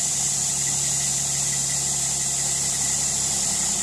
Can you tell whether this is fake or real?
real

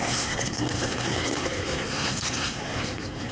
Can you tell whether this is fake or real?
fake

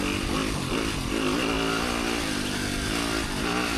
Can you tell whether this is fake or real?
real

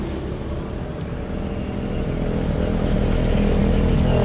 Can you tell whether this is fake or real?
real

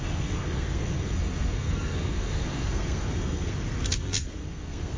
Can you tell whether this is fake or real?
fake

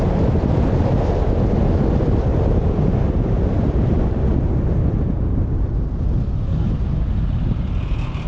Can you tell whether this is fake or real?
real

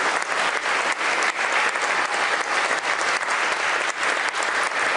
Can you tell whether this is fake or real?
real